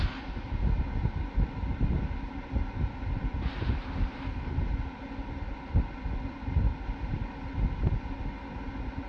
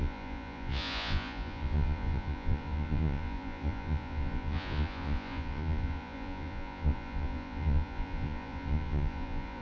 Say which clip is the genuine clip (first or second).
first